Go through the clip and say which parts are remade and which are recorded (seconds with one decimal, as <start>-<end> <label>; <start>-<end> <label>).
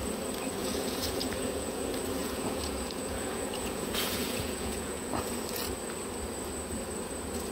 0.0-0.6 recorded; 0.6-1.8 remade; 1.8-2.2 recorded; 2.2-5.3 remade; 5.3-7.5 recorded